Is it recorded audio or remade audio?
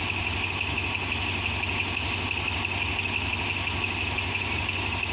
recorded